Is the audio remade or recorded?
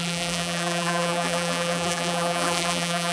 remade